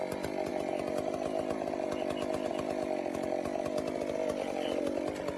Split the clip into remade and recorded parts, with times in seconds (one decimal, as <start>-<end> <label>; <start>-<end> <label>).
0.0-5.4 recorded